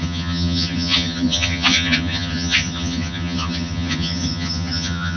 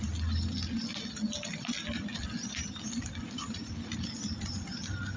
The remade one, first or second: first